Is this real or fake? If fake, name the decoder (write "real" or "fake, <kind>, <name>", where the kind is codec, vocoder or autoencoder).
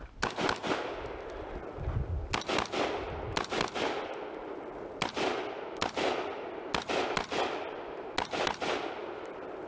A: real